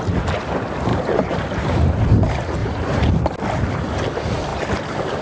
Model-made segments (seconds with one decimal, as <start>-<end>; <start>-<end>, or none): 0.9-2.1; 2.6-3.1